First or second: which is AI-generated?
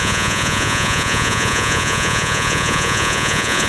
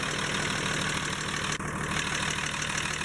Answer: first